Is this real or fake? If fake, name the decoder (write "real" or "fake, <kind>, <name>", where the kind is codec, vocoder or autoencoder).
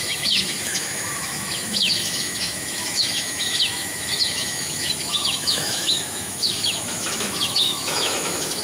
fake, autoencoder, DAC-VAE